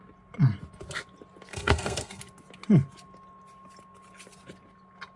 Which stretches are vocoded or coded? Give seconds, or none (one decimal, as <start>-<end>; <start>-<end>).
1.5-2.2

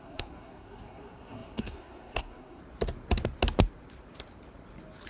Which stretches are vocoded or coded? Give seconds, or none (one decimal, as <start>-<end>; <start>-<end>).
0.0-2.6

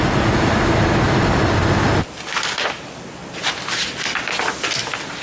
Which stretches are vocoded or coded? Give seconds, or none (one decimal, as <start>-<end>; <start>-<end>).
none